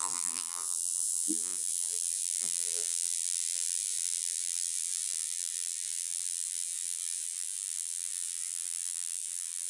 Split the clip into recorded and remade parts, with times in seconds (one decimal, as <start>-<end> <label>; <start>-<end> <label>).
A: 0.0-9.7 remade